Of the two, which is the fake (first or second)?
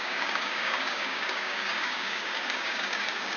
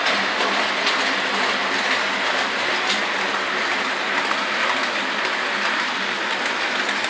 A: first